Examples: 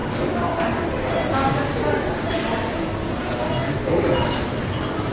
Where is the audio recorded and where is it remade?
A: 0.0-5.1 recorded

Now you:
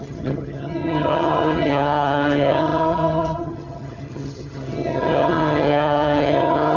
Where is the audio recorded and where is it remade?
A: 0.0-6.8 remade